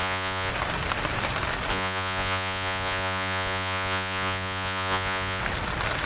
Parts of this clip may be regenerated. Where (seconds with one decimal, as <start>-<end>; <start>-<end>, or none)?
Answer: 0.0-0.5; 1.7-5.4